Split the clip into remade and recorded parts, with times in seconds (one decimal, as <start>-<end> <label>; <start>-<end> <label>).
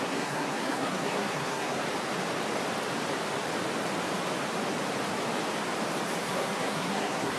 0.0-1.8 remade; 1.8-6.2 recorded; 6.2-7.4 remade